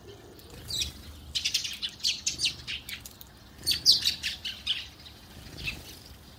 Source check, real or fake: real